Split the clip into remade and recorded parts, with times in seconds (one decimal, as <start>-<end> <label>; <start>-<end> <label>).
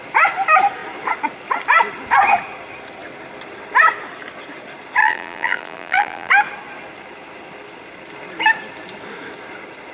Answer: 0.0-5.0 recorded; 5.0-6.3 remade; 6.3-9.9 recorded